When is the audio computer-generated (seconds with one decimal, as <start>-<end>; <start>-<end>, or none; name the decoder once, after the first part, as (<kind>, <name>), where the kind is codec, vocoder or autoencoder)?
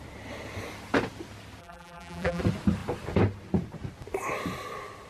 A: 1.6-2.4 (vocoder, BigVGAN v2)